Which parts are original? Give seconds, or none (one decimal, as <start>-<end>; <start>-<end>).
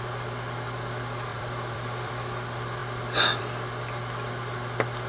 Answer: 0.0-1.3; 2.1-5.1